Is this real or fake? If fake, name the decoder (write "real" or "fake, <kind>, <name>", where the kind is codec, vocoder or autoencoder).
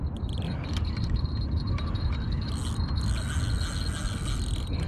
real